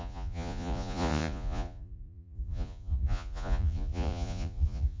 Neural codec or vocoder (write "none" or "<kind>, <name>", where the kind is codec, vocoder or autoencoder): vocoder, Vocos